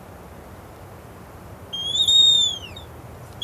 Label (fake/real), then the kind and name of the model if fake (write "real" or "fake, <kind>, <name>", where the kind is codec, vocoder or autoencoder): fake, vocoder, BigVGAN v2